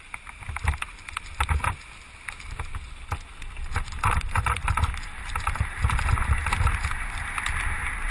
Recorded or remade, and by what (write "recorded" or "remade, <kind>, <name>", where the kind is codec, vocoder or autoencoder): recorded